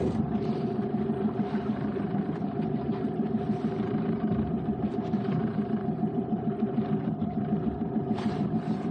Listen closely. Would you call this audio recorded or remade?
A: remade